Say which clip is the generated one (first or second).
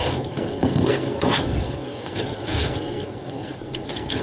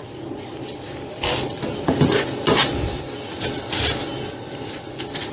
first